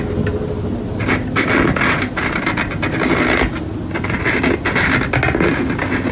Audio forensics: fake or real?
real